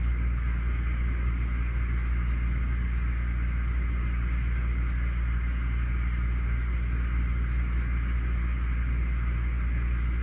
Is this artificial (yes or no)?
no